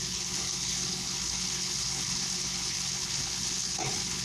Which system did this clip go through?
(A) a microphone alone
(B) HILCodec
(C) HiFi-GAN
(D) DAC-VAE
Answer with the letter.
B